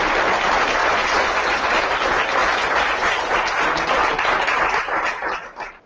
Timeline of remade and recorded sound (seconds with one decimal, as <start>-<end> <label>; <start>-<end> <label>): 0.0-0.8 recorded; 0.8-1.7 remade; 1.7-2.4 recorded; 2.4-3.3 remade; 3.3-5.9 recorded